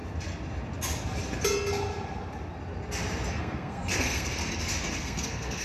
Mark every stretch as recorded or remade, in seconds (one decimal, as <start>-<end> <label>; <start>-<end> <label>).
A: 0.0-3.4 recorded; 3.4-4.4 remade; 4.4-4.9 recorded; 4.9-5.6 remade